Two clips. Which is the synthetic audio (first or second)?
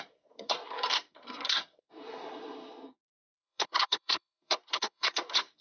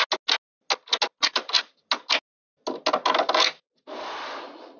first